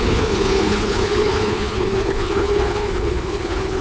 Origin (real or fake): fake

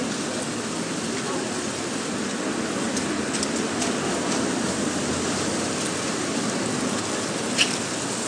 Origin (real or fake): real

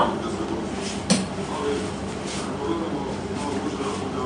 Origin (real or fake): real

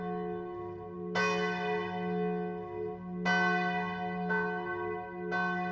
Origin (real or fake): real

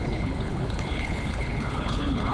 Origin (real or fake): fake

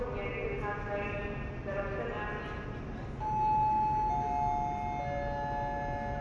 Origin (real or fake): real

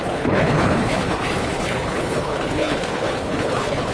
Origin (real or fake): fake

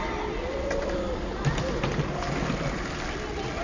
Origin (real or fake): real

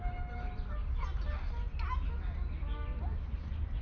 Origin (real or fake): real